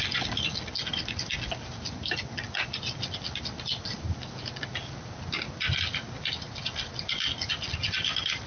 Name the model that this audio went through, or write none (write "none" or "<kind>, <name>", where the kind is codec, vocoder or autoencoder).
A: none